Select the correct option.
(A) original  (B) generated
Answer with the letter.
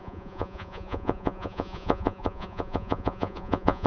B